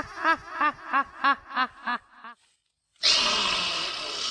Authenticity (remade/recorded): recorded